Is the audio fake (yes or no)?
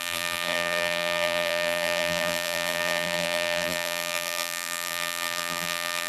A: yes